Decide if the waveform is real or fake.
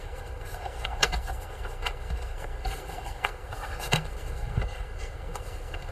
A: fake